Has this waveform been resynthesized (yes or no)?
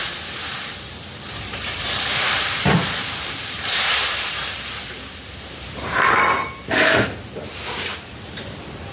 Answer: yes